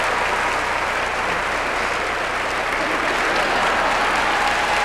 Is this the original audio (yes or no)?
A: yes